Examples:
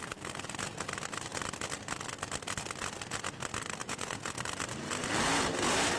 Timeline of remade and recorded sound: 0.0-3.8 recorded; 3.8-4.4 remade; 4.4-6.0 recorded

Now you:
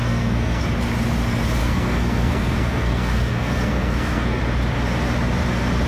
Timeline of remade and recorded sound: 0.0-0.6 remade; 0.6-1.6 recorded; 1.6-4.4 remade; 4.4-5.9 recorded

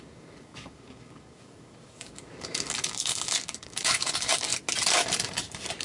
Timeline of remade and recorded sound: 0.0-4.5 remade; 4.5-5.8 recorded